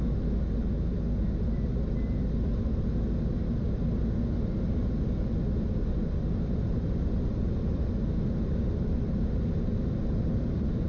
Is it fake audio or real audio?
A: real